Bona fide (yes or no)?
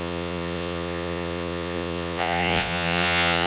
no